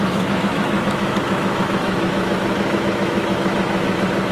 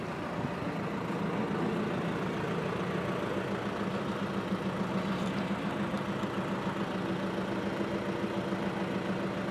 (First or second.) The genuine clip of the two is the second